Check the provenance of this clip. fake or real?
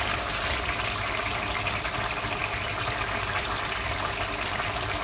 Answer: fake